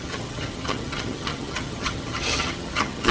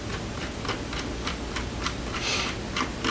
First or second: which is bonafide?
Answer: second